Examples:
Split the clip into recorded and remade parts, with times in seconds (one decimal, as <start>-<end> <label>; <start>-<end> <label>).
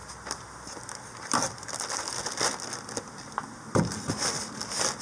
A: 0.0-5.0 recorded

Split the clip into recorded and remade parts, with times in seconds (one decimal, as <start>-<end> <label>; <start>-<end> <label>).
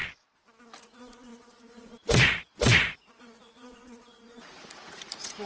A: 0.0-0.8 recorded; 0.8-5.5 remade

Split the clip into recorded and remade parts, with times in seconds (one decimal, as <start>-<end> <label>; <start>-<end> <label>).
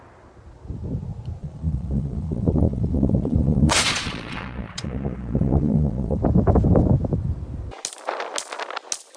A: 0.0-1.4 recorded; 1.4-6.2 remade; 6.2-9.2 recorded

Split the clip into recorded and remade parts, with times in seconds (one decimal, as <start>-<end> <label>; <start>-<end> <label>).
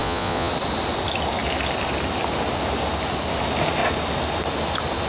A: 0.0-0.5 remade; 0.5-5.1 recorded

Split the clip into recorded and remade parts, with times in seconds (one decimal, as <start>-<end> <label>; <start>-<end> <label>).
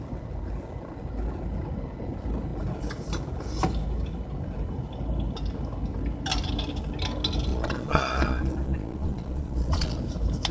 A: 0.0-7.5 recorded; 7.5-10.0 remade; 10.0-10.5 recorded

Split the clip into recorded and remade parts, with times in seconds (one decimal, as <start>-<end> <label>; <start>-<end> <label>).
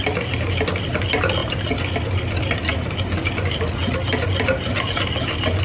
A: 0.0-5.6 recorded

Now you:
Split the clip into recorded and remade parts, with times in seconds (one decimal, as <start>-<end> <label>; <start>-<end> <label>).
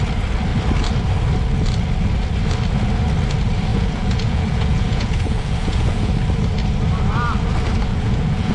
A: 0.0-3.7 recorded; 3.7-6.1 remade; 6.1-7.9 recorded; 7.9-8.5 remade